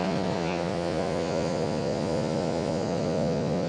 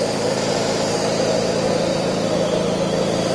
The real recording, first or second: second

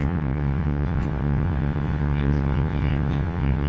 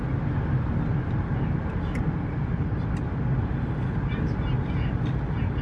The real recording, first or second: second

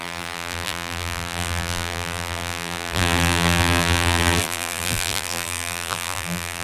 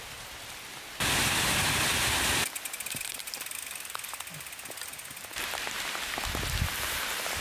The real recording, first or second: second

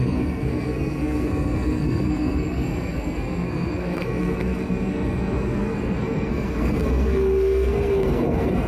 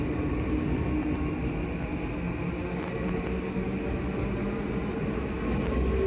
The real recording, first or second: second